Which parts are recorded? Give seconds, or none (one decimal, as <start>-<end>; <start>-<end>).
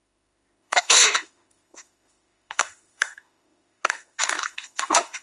none